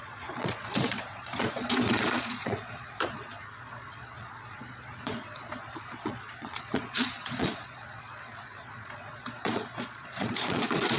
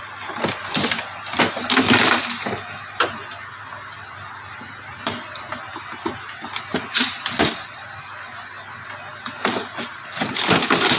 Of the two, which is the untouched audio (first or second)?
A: second